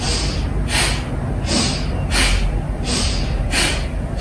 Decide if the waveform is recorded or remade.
recorded